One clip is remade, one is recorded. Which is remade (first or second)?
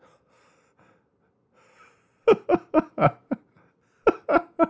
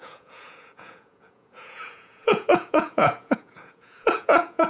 second